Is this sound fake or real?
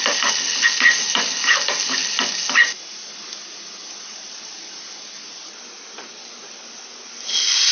real